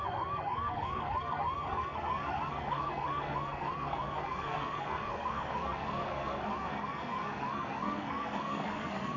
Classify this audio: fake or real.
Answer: fake